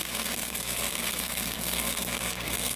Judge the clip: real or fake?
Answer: fake